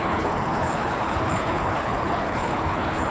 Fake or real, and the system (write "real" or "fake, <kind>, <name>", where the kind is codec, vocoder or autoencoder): fake, codec, HILCodec